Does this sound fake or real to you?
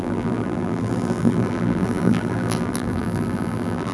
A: fake